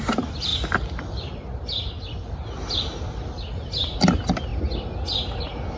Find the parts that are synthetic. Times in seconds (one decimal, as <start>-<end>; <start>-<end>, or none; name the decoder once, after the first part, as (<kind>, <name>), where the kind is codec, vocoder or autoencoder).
none